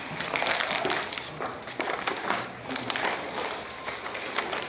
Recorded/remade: recorded